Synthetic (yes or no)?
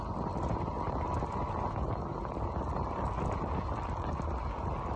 no